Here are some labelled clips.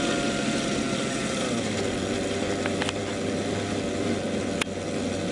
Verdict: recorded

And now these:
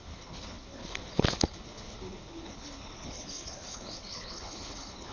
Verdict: remade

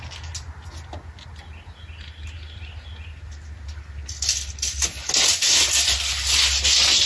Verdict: recorded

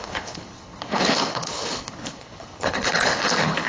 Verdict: remade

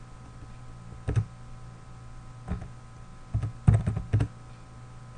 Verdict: recorded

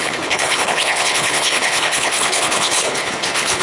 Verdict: remade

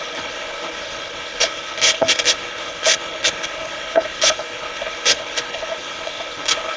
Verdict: remade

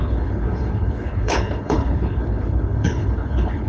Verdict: remade